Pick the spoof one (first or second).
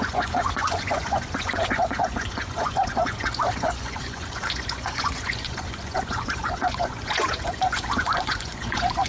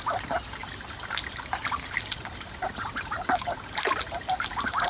first